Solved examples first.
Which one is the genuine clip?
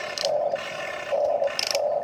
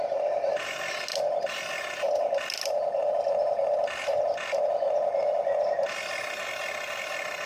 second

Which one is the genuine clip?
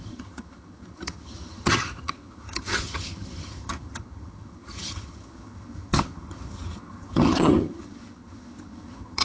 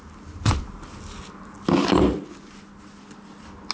second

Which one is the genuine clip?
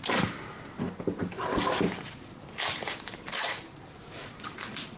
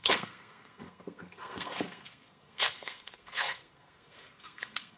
first